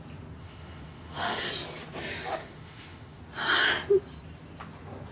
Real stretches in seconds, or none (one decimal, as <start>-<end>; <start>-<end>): 0.0-0.4; 1.5-2.4; 3.2-5.1